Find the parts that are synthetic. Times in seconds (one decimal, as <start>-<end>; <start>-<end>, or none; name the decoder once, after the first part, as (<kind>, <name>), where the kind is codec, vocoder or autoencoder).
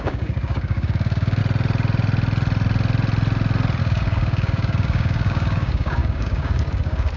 0.0-1.4 (codec, DAC); 3.8-7.2